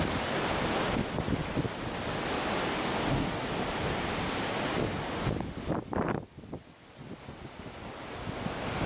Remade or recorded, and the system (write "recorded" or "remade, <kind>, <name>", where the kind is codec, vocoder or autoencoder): recorded